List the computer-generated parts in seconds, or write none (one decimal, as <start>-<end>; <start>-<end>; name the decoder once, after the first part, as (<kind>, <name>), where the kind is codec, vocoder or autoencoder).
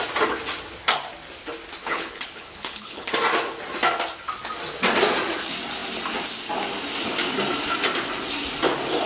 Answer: 1.8-3.1 (codec, HILCodec)